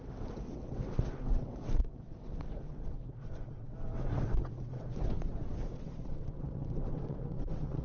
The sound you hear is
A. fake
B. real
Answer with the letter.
A